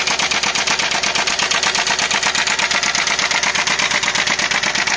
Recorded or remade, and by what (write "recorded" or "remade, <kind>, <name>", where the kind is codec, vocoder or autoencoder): recorded